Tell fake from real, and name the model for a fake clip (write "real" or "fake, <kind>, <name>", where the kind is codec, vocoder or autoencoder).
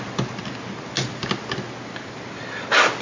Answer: real